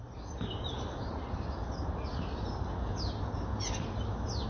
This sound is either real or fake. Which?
real